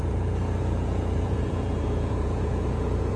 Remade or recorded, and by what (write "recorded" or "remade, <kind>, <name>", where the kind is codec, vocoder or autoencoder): remade, vocoder, Vocos